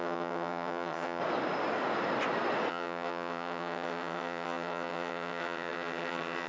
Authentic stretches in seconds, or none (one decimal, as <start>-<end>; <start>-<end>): 1.2-2.7